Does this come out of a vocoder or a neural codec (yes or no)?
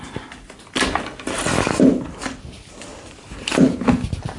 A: no